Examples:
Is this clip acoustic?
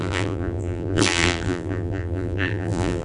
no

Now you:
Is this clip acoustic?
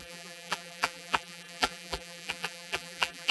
no